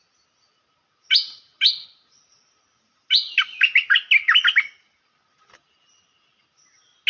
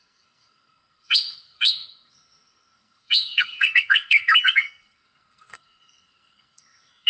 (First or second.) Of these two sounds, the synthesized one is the second